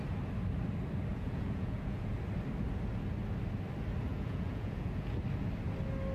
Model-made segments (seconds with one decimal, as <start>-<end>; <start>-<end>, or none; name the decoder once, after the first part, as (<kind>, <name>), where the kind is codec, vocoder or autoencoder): 1.1-2.1 (vocoder, Vocos); 4.1-5.2